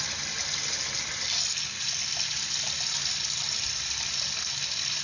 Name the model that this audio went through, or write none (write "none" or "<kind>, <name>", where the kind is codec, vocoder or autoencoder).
none